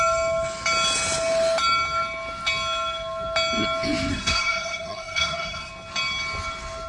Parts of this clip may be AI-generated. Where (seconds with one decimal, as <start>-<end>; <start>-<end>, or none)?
4.1-5.7